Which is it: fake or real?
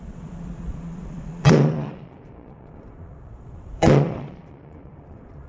fake